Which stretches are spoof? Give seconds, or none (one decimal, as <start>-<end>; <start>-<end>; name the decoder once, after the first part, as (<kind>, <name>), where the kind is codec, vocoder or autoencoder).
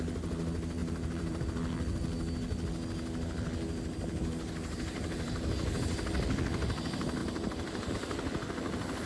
0.8-1.4 (vocoder, BigVGAN v2); 4.9-5.5; 7.2-7.9